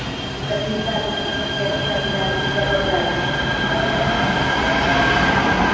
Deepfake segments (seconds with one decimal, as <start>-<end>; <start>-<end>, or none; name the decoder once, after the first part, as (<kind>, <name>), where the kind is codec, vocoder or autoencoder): none